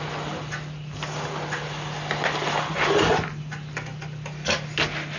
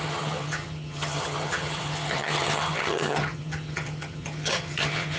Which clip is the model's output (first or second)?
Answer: second